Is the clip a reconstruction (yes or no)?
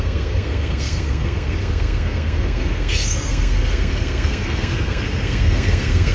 yes